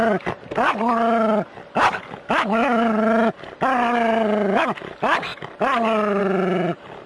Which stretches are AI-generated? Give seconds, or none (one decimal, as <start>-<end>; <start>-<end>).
none